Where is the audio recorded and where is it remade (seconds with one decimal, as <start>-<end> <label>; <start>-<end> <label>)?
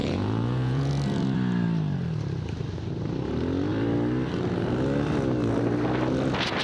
0.0-0.9 remade; 0.9-6.6 recorded